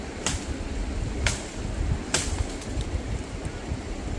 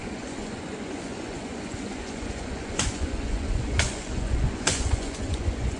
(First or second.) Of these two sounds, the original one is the first